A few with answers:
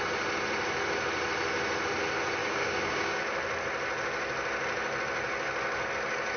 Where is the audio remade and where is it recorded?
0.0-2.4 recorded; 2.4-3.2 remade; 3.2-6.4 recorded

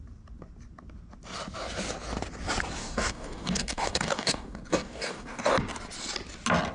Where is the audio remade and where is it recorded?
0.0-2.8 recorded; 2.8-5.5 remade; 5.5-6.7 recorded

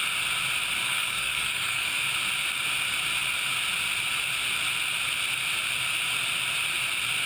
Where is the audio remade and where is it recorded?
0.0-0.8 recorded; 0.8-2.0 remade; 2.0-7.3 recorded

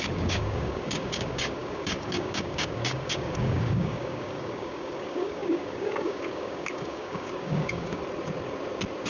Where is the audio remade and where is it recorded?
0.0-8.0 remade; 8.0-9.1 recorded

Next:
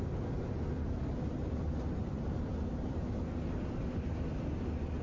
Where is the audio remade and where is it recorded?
0.0-5.0 recorded

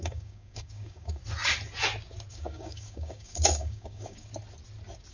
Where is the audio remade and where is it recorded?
0.0-1.2 remade; 1.2-2.3 recorded; 2.3-4.3 remade; 4.3-5.1 recorded

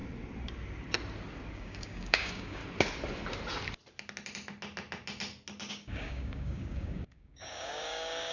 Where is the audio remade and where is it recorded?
0.0-1.5 recorded; 1.5-2.6 remade; 2.6-5.7 recorded; 5.7-8.3 remade

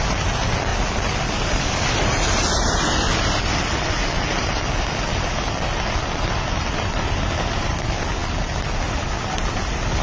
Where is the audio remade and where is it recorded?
0.0-10.0 recorded